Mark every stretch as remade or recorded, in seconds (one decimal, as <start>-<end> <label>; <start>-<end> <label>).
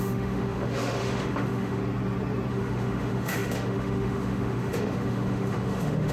0.0-1.8 remade; 1.8-2.5 recorded; 2.5-6.1 remade